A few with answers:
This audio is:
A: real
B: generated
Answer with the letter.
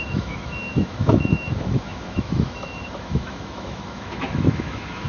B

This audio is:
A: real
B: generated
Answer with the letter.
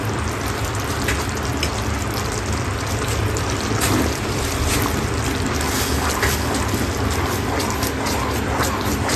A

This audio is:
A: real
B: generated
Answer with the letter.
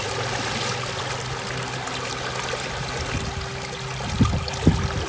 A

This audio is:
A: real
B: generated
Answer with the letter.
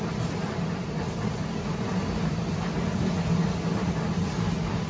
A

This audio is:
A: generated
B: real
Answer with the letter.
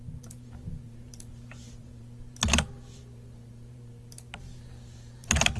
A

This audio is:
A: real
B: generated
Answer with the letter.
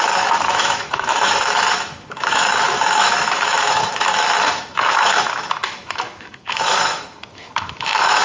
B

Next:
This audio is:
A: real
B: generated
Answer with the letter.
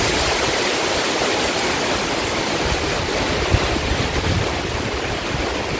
A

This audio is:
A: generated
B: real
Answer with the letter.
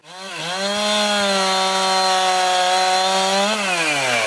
B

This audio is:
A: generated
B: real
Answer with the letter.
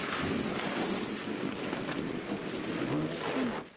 B